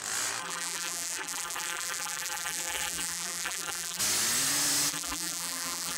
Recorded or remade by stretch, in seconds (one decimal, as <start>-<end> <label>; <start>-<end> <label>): 0.0-0.4 recorded; 0.4-4.0 remade; 4.0-4.9 recorded; 4.9-6.0 remade